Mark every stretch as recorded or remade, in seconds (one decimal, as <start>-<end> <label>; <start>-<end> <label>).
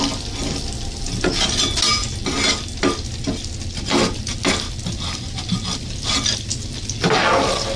0.0-7.8 recorded